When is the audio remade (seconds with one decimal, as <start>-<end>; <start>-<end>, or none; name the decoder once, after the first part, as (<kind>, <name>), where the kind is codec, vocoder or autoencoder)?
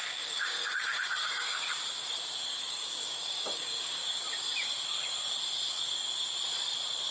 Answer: 0.0-1.7 (codec, DAC); 2.7-4.0